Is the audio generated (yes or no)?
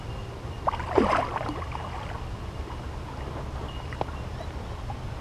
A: no